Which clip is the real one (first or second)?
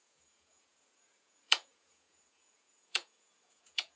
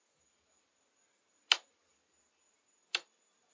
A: second